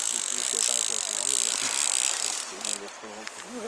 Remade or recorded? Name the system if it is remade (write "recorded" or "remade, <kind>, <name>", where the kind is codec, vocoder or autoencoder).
recorded